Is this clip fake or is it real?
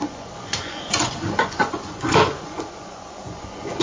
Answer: fake